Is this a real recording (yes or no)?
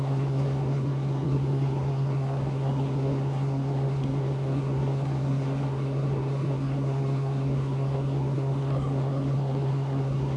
no